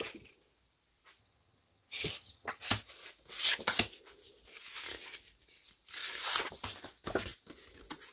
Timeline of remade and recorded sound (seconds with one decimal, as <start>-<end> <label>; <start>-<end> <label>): 0.0-1.2 recorded; 1.2-2.7 remade; 2.7-8.1 recorded